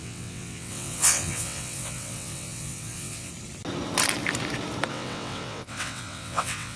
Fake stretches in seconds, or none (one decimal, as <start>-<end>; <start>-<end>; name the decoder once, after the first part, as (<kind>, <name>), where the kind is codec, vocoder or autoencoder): 0.0-3.3 (vocoder, WaveNeXt); 4.9-6.8

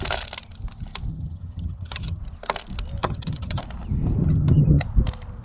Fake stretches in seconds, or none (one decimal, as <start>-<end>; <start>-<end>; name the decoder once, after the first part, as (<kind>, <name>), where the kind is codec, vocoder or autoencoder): 1.1-2.2 (vocoder, HiFi-GAN); 3.0-3.6; 4.2-4.8

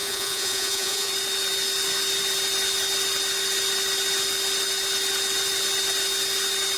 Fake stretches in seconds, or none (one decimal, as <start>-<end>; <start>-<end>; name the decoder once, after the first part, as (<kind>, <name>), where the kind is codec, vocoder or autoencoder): 0.0-1.1 (vocoder, Vocos)

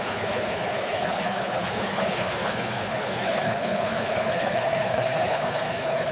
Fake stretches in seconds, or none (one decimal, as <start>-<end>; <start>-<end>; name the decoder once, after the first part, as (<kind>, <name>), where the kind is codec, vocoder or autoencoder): 0.0-6.1 (codec, HILCodec)

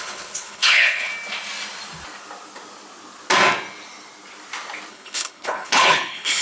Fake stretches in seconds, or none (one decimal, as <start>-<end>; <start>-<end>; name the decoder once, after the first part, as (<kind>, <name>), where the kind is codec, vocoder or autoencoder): 0.0-1.1 (codec, HILCodec); 4.9-6.4

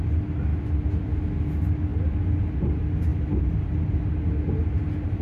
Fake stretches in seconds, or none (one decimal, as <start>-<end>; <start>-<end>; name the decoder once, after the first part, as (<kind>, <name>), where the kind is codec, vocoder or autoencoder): none

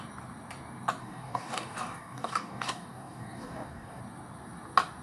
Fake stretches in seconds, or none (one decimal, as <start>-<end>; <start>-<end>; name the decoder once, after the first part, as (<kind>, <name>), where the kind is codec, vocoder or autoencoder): 1.0-4.0 (codec, DAC)